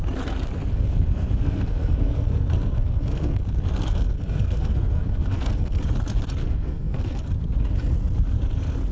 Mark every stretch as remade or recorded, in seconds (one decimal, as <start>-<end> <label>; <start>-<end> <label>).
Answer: 0.0-0.7 recorded; 0.7-5.8 remade; 5.8-6.4 recorded; 6.4-7.2 remade; 7.2-8.9 recorded